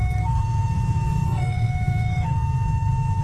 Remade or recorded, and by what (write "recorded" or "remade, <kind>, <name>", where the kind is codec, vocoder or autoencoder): remade, codec, SNAC